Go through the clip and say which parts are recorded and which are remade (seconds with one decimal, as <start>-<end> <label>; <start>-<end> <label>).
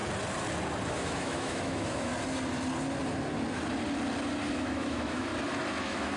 0.0-0.9 recorded; 0.9-2.1 remade; 2.1-4.5 recorded; 4.5-5.3 remade; 5.3-5.8 recorded; 5.8-6.2 remade